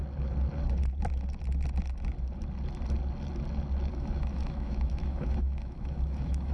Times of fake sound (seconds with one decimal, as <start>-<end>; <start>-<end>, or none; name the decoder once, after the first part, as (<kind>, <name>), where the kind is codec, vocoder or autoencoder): 3.9-6.5 (autoencoder, DAC-VAE)